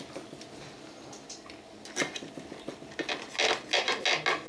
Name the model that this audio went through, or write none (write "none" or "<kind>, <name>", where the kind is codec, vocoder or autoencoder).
none